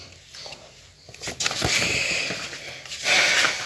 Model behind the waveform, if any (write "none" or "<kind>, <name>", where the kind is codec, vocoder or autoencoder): none